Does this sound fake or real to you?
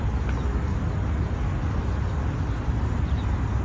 real